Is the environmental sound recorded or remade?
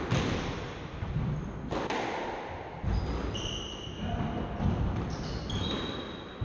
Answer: recorded